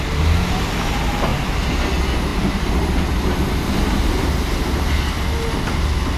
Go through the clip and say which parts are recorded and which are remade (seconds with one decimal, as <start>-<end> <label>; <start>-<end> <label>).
0.0-1.3 recorded; 1.3-1.8 remade; 1.8-2.3 recorded; 2.3-5.1 remade; 5.1-6.2 recorded